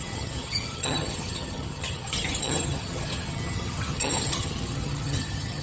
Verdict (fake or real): fake